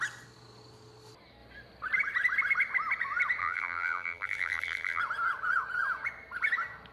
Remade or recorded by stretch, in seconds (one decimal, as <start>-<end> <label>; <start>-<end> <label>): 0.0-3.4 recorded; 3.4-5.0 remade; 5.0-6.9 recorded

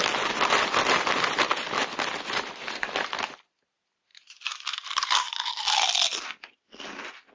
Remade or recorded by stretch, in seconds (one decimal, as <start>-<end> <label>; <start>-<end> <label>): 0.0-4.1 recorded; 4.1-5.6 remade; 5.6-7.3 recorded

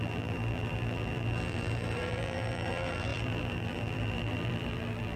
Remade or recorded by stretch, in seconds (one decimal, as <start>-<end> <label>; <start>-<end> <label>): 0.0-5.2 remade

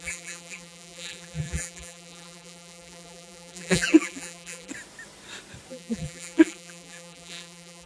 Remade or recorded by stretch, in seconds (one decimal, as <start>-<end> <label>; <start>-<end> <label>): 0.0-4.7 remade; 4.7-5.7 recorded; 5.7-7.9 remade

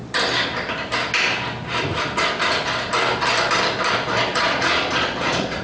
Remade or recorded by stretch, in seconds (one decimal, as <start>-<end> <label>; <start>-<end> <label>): 0.0-4.3 recorded; 4.3-5.6 remade